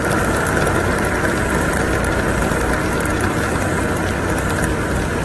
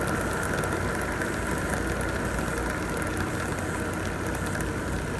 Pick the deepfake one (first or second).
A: first